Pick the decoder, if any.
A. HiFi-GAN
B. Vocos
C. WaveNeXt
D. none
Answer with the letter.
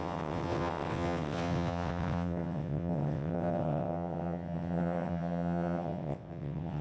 C